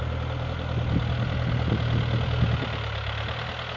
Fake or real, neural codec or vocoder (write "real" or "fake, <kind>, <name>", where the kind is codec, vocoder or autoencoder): real